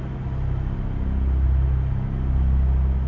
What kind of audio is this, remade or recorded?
recorded